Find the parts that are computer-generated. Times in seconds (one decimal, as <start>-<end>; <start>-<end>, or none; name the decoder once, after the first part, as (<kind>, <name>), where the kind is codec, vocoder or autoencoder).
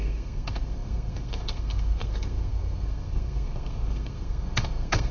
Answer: 0.0-5.1 (codec, SNAC)